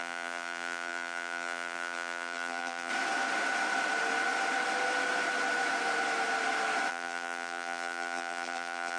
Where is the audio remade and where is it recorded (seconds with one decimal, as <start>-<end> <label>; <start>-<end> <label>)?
0.0-2.9 remade; 2.9-6.9 recorded; 6.9-9.0 remade